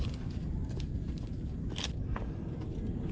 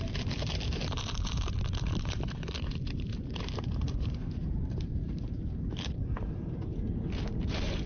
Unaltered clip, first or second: first